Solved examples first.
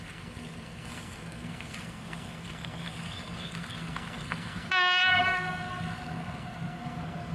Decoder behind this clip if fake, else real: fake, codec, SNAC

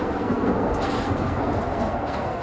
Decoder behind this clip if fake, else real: fake, codec, SNAC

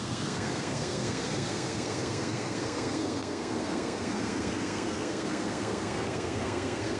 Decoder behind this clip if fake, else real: fake, codec, SNAC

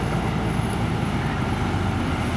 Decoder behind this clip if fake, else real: real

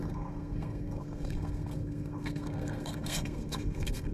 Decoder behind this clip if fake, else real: fake, codec, SNAC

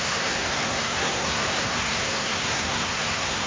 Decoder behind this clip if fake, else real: fake, codec, SNAC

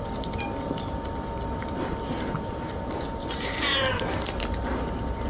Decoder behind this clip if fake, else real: real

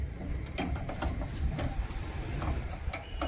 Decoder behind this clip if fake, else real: real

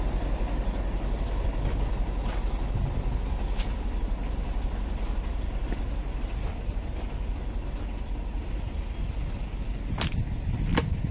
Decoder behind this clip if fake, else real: real